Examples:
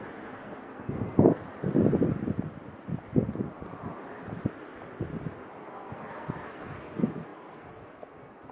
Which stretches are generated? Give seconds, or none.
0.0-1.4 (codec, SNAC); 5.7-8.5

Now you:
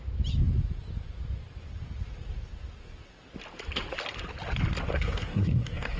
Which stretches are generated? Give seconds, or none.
4.9-6.0 (codec, SNAC)

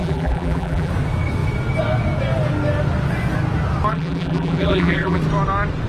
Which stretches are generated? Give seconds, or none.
0.0-0.9 (vocoder, BigVGAN v2); 3.9-5.2

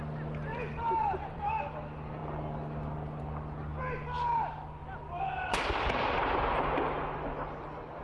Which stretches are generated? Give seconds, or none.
0.5-1.5 (vocoder, BigVGAN v2)

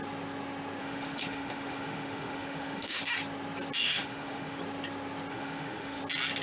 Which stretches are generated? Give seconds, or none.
0.8-3.0 (autoencoder, DAC-VAE); 3.8-4.6; 5.3-6.0

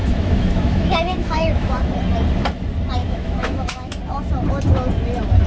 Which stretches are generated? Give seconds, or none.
0.0-1.7 (autoencoder, DAC-VAE); 3.0-4.0

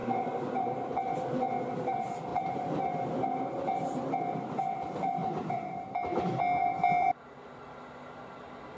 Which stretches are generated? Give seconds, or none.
0.0-0.9 (vocoder, BigVGAN v2); 2.3-2.8; 5.2-6.4